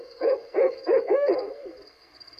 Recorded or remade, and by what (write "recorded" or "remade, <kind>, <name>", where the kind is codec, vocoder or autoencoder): remade, codec, SNAC